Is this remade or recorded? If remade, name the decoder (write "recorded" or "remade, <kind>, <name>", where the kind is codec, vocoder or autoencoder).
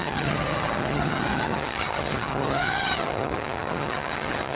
remade, vocoder, HiFi-GAN